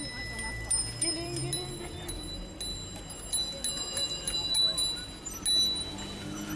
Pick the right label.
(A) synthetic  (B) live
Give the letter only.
B